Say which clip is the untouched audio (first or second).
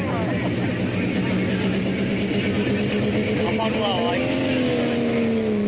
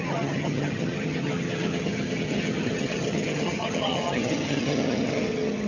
first